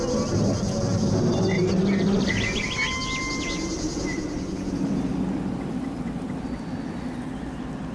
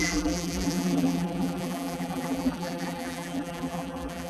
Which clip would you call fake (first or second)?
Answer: second